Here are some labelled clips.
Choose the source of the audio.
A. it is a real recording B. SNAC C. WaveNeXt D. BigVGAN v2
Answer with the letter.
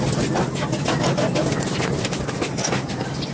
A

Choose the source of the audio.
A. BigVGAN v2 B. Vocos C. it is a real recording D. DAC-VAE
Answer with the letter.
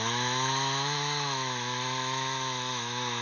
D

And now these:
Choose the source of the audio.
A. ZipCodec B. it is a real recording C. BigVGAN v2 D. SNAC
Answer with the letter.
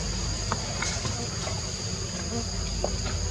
B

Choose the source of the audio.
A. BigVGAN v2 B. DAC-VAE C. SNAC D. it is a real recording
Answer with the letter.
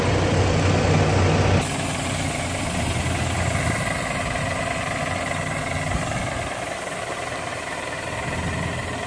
D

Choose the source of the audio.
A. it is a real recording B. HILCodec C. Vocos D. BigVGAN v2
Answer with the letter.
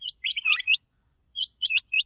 C